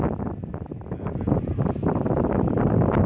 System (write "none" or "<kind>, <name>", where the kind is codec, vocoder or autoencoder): none